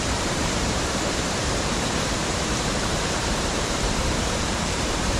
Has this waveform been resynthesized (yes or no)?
yes